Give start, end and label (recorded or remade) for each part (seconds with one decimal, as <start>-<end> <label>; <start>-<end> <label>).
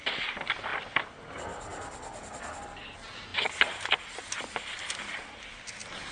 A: 0.0-6.1 recorded